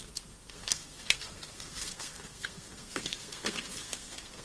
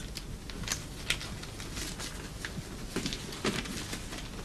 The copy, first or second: first